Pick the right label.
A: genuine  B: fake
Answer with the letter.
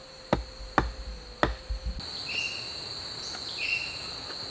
A